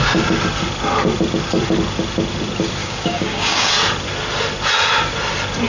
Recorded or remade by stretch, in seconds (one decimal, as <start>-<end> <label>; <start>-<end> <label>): 0.0-2.8 recorded; 2.8-3.7 remade; 3.7-5.7 recorded